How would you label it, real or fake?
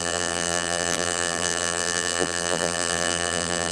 fake